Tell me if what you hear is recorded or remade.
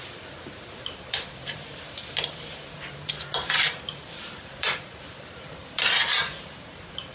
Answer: remade